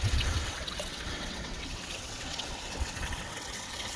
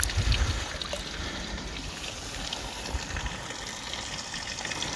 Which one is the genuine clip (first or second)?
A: second